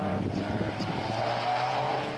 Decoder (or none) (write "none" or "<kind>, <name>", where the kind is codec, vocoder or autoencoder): none